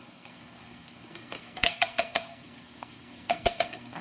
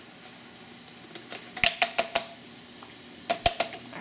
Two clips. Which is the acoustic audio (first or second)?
second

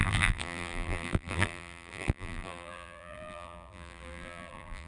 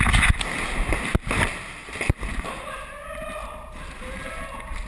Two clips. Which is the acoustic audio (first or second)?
second